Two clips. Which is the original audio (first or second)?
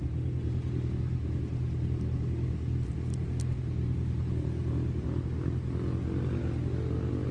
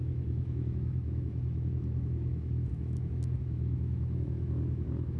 first